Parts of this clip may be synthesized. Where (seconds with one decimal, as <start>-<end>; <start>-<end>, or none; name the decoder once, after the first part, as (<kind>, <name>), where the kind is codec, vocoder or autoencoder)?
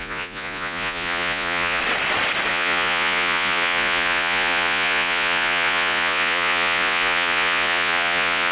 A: 0.0-1.8 (vocoder, Vocos); 2.5-8.5